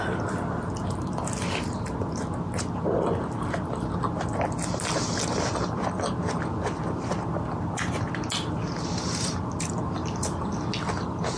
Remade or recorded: recorded